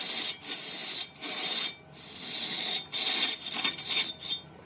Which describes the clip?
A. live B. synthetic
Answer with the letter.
A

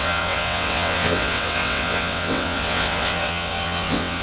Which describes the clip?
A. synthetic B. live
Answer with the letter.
A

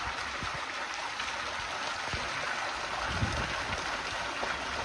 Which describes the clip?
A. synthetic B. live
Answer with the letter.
B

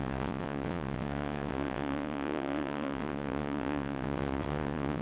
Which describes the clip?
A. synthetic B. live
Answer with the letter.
A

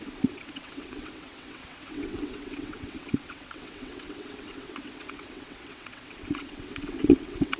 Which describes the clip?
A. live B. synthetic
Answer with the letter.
B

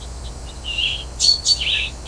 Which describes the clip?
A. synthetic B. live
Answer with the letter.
B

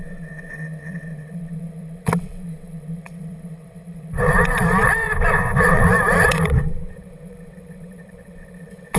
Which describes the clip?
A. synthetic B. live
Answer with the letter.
A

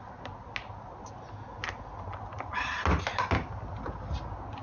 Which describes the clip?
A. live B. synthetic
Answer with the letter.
A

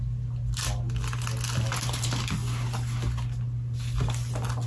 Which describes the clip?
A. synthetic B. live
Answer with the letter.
B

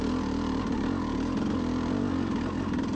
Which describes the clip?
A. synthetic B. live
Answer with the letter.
B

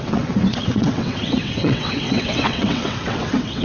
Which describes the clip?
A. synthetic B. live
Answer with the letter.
A